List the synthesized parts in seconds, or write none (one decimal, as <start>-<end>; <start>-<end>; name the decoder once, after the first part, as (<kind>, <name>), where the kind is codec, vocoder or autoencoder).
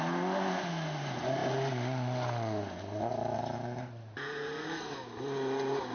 none